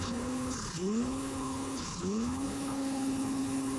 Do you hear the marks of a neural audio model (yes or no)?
yes